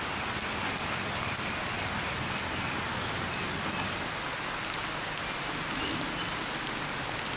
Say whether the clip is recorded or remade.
recorded